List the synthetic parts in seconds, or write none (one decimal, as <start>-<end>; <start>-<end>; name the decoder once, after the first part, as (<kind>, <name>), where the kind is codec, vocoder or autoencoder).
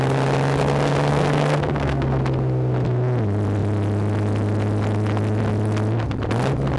1.1-2.2 (codec, SNAC)